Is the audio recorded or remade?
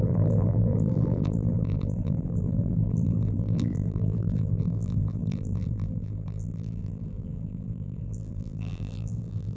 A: remade